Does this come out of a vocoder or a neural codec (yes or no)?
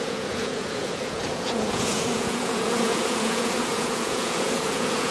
yes